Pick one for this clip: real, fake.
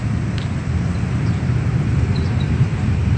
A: fake